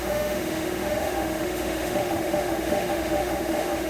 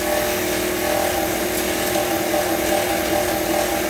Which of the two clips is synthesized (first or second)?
first